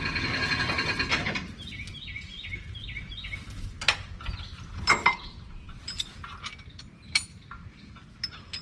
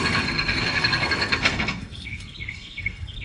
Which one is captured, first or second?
first